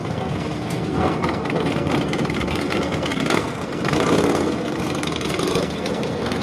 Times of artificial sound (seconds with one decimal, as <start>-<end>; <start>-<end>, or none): 0.0-6.4